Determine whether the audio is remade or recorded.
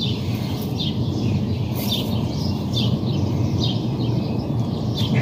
recorded